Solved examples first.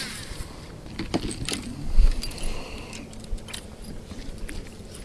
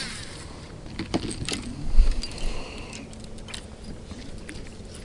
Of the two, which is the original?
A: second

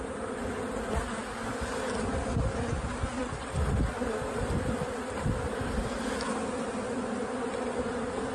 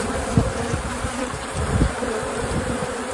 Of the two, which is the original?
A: first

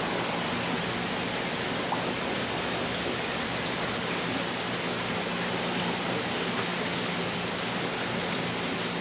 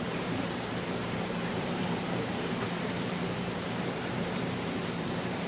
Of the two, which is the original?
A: first